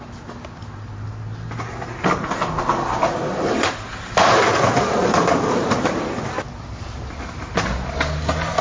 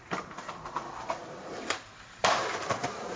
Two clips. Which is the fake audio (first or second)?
second